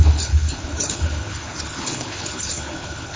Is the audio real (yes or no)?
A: no